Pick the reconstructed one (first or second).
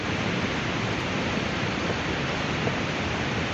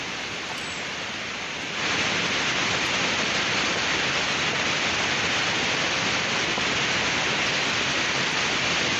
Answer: first